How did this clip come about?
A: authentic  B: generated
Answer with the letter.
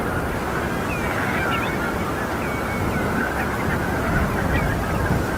A